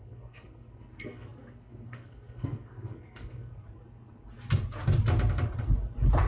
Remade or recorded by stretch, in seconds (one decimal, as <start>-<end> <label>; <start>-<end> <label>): 0.0-3.6 remade; 3.6-6.3 recorded